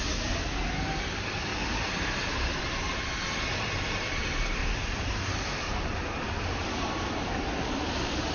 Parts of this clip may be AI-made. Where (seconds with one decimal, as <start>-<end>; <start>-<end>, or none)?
1.5-2.6; 4.6-8.3